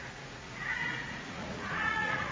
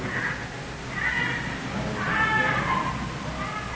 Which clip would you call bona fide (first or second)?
second